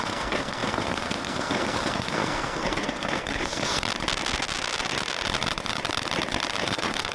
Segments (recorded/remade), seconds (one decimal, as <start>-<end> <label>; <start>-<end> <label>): 0.0-3.9 remade; 3.9-6.6 recorded; 6.6-7.1 remade